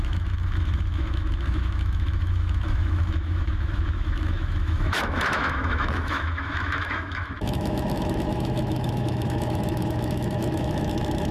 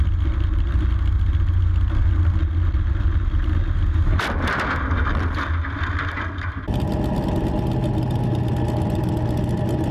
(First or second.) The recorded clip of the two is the second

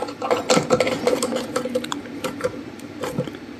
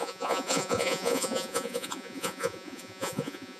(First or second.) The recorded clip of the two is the first